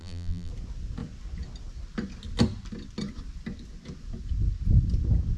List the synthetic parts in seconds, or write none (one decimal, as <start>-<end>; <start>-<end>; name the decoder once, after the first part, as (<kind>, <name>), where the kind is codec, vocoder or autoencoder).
0.0-0.5 (vocoder, BigVGAN v2)